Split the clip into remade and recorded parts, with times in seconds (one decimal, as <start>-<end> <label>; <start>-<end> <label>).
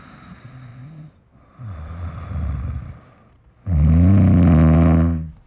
0.0-0.7 recorded; 0.7-3.5 remade; 3.5-5.5 recorded